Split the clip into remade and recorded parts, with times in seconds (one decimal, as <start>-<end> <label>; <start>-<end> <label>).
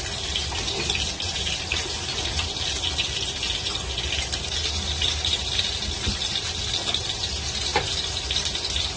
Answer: 0.0-9.0 recorded